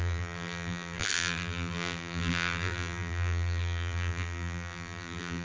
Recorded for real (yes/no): no